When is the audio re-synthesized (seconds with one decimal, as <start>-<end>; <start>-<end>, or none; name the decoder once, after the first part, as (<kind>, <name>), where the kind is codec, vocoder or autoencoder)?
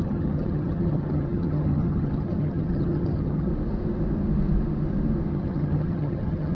0.0-3.5 (vocoder, HiFi-GAN); 5.3-6.5